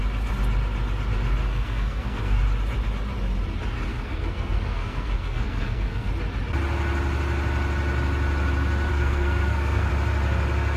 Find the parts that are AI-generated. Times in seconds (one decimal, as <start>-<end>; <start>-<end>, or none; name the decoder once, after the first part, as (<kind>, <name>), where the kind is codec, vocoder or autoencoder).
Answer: 1.4-2.4 (codec, SNAC); 3.9-6.1; 8.9-9.9